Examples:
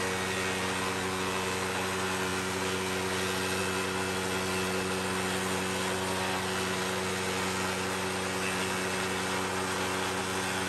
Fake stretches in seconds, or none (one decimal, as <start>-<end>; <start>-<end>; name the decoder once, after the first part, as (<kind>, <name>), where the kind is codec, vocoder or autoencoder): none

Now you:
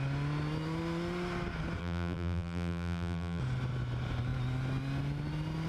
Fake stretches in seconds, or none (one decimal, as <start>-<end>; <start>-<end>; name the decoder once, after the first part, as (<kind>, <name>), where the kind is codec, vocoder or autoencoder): 1.8-3.4 (vocoder, BigVGAN v2)

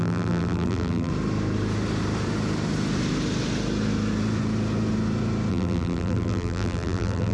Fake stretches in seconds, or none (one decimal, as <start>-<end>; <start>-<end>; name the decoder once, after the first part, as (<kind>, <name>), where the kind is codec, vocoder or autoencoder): 0.0-1.1 (vocoder, BigVGAN v2); 5.5-7.3

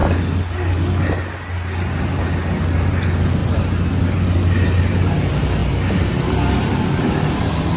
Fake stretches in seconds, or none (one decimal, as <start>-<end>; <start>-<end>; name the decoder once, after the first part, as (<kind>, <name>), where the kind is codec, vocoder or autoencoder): none

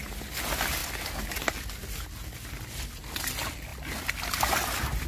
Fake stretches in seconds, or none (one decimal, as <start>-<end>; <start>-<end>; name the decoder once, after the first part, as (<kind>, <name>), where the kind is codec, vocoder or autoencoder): none